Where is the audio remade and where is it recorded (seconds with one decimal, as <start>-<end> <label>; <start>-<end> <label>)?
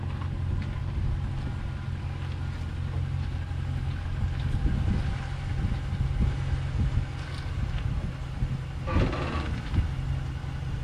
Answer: 0.0-10.8 recorded